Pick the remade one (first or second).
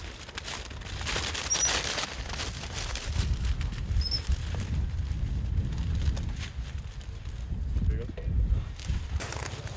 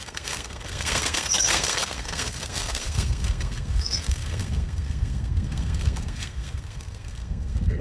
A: second